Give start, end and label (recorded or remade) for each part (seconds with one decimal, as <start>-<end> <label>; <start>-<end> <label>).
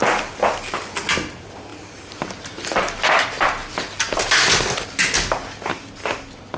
0.0-6.6 recorded